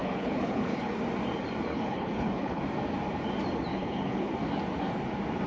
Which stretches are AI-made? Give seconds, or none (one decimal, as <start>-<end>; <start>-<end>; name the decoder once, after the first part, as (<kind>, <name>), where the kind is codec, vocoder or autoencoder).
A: 0.0-0.9 (codec, HILCodec); 1.7-2.6; 3.7-4.3